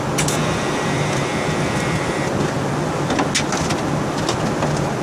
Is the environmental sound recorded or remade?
recorded